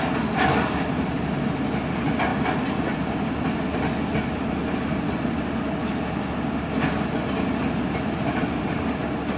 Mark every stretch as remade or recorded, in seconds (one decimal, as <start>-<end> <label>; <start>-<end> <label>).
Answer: 0.0-9.4 recorded